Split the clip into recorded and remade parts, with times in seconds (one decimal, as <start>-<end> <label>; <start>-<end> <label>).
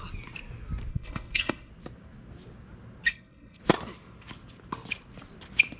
0.0-0.9 recorded; 0.9-1.7 remade; 1.7-3.1 recorded; 3.1-3.6 remade; 3.6-5.8 recorded